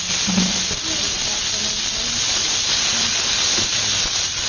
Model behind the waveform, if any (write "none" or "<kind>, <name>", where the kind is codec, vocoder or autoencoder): none